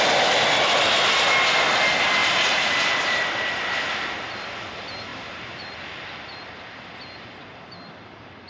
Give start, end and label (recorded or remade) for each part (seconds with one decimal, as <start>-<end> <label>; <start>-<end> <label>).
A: 0.0-2.2 recorded; 2.2-3.9 remade; 3.9-5.1 recorded; 5.1-6.0 remade; 6.0-8.5 recorded

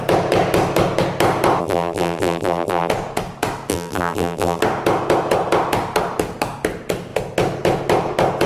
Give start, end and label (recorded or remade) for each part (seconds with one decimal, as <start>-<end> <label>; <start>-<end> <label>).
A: 0.0-1.6 recorded; 1.6-2.9 remade; 2.9-3.7 recorded; 3.7-4.6 remade; 4.6-8.5 recorded